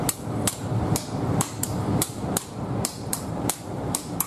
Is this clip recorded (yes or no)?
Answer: no